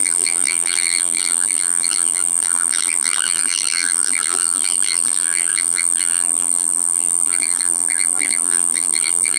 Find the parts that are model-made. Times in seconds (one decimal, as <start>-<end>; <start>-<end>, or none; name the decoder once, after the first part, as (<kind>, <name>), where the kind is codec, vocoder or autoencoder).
0.0-9.4 (vocoder, BigVGAN v2)